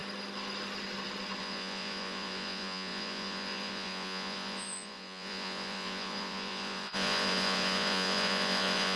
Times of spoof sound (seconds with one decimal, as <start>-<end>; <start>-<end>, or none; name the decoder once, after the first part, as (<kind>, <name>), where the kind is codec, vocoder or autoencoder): 1.4-9.0 (vocoder, Vocos)